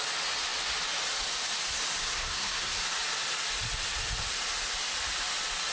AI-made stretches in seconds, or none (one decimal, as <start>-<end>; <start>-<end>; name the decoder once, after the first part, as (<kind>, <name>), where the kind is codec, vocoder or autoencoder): 2.0-2.8 (codec, SNAC)